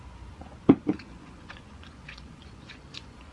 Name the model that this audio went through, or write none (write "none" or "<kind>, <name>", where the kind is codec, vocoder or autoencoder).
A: vocoder, Vocos